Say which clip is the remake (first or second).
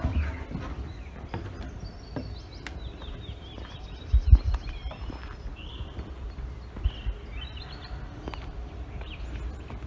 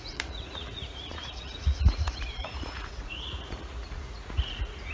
second